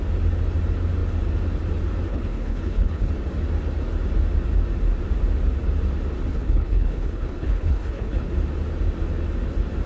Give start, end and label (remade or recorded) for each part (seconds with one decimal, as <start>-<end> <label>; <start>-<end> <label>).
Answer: 0.0-2.1 recorded; 2.1-3.1 remade; 3.1-6.3 recorded; 6.3-8.3 remade; 8.3-9.9 recorded